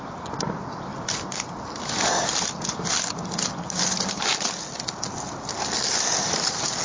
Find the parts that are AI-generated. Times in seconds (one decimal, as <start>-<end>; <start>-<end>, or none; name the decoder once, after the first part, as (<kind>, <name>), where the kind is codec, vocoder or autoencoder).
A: 0.9-2.0 (vocoder, BigVGAN v2)